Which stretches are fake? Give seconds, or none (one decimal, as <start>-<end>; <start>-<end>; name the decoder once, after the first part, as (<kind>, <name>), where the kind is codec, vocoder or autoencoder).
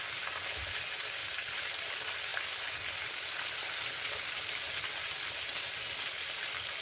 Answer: 1.2-1.8 (vocoder, BigVGAN v2)